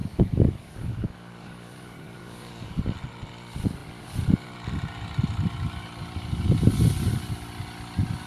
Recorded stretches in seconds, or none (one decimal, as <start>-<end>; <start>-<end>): 2.8-8.3